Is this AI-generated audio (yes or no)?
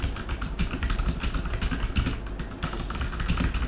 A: no